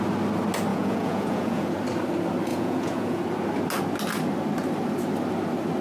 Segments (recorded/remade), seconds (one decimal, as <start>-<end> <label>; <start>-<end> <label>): 0.0-0.7 recorded; 0.7-1.7 remade; 1.7-2.5 recorded; 2.5-3.2 remade; 3.2-5.8 recorded